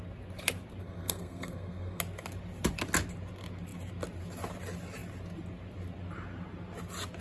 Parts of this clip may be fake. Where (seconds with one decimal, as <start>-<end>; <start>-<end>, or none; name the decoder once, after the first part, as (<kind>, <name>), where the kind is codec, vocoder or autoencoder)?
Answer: 0.8-2.0 (codec, SNAC)